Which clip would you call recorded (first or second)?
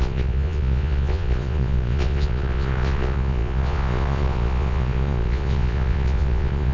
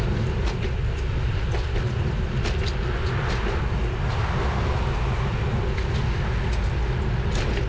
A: second